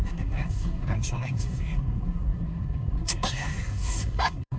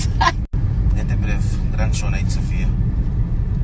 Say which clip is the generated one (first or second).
first